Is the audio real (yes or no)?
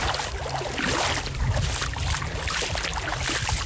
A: yes